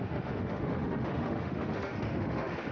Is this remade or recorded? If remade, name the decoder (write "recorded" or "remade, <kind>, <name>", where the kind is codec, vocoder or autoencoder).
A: remade, autoencoder, DAC-VAE